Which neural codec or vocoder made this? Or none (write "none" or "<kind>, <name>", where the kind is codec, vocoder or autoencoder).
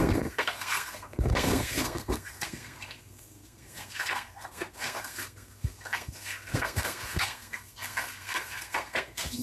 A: codec, SNAC